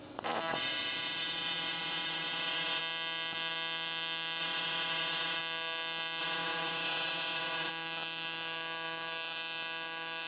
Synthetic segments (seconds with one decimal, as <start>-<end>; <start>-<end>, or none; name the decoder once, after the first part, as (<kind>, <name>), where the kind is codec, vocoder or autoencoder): 0.5-2.8 (vocoder, WaveNeXt); 4.4-5.4; 6.2-7.7